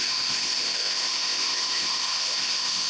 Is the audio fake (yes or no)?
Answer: yes